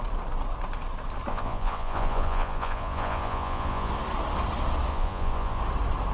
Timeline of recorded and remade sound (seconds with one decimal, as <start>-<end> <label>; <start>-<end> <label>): 0.0-1.3 recorded; 1.3-3.9 remade; 3.9-4.9 recorded; 4.9-5.6 remade; 5.6-6.1 recorded